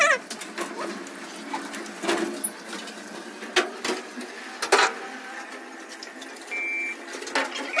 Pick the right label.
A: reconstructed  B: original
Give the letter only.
B